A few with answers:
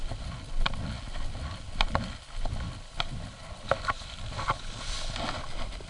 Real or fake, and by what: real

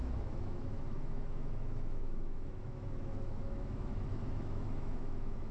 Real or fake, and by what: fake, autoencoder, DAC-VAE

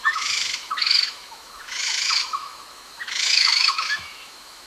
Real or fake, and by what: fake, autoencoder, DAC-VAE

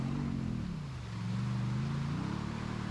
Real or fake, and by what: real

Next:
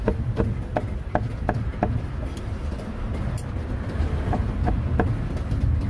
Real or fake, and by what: real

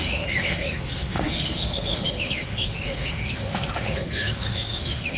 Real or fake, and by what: fake, autoencoder, DAC-VAE